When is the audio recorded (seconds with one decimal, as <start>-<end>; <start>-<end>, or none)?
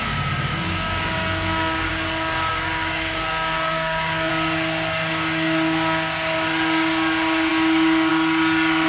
0.0-0.5; 1.9-2.5; 4.3-8.9